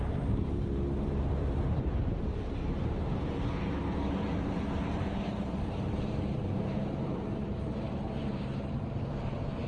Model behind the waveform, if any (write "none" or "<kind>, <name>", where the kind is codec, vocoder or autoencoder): vocoder, BigVGAN v2